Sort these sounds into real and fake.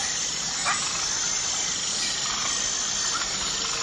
real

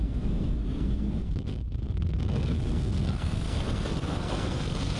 fake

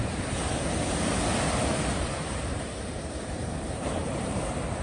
fake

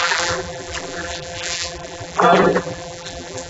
fake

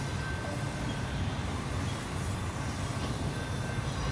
real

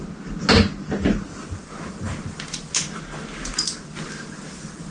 real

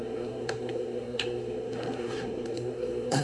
fake